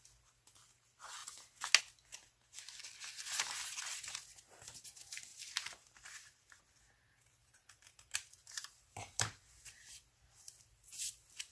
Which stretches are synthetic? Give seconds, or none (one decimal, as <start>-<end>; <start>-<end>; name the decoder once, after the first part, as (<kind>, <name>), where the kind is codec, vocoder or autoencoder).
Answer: 2.2-2.8 (vocoder, BigVGAN v2); 5.3-6.6; 7.4-10.2